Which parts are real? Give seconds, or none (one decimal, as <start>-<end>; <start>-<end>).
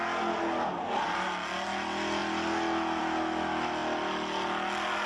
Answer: 0.0-5.1